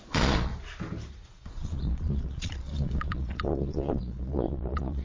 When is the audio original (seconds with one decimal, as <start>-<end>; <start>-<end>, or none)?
0.5-1.1